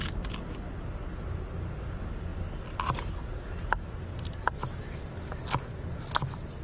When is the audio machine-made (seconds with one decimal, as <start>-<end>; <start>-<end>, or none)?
none